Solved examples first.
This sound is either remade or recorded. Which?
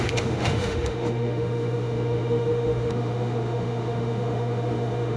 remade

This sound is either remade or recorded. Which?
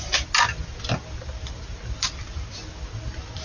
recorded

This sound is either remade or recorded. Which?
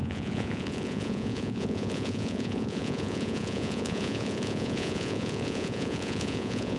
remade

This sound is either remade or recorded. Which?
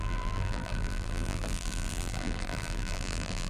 remade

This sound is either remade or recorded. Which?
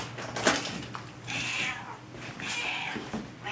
recorded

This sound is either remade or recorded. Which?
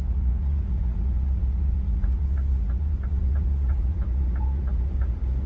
remade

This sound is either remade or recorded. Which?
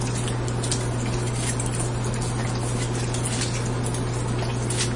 recorded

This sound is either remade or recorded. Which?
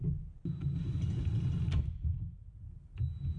recorded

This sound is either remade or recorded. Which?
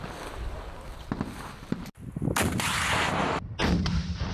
recorded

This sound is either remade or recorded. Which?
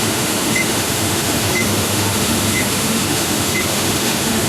remade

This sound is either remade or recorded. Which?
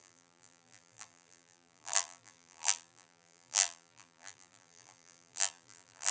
remade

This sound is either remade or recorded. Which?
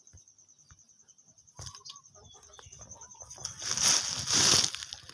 recorded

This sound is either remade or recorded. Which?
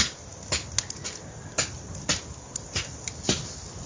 recorded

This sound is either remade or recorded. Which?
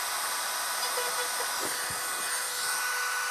recorded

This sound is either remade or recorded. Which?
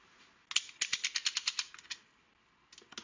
recorded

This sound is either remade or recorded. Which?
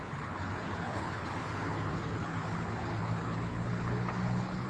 remade